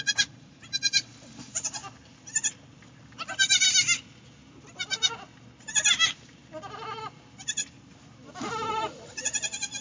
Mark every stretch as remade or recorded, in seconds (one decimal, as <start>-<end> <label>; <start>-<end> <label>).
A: 0.0-1.8 remade; 1.8-7.0 recorded; 7.0-9.8 remade

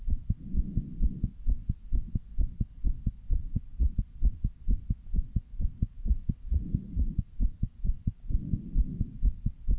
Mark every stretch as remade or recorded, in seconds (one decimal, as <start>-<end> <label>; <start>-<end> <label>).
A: 0.0-3.4 recorded; 3.4-3.9 remade; 3.9-6.1 recorded; 6.1-7.1 remade; 7.1-9.8 recorded

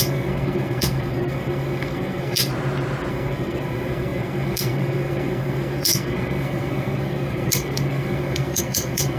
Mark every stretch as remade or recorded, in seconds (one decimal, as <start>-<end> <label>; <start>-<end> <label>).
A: 0.0-2.5 remade; 2.5-3.1 recorded; 3.1-9.2 remade